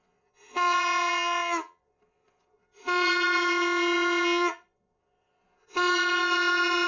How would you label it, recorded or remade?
remade